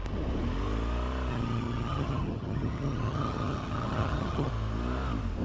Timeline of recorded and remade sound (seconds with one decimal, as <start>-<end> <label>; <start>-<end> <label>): 0.0-1.3 recorded; 1.3-4.5 remade; 4.5-5.4 recorded